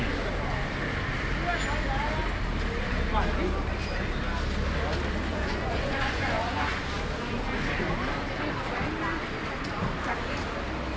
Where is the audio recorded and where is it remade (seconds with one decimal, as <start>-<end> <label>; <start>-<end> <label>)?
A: 0.0-5.3 recorded; 5.3-6.8 remade; 6.8-11.0 recorded